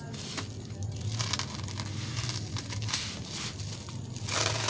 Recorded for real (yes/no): yes